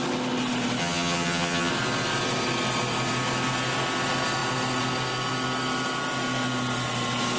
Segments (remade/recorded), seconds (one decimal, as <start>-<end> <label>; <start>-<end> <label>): 0.0-0.8 recorded; 0.8-1.7 remade; 1.7-7.4 recorded